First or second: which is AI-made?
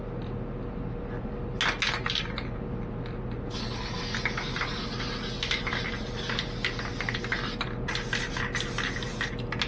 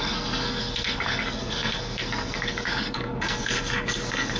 second